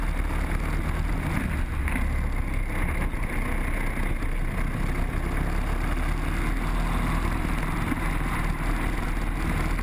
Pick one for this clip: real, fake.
real